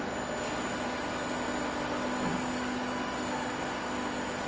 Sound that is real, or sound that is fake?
real